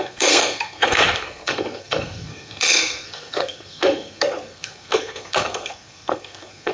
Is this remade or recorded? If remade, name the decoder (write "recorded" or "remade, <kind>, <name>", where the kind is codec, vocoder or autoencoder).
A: remade, codec, SNAC